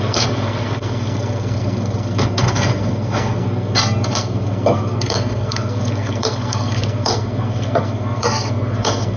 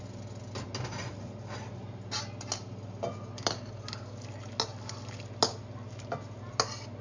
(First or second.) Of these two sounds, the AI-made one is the first